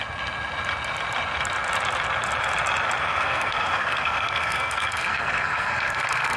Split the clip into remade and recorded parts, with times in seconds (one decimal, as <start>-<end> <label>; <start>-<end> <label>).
0.0-3.0 recorded; 3.0-6.4 remade